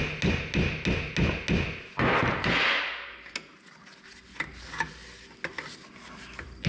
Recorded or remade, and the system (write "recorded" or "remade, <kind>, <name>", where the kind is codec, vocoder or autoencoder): recorded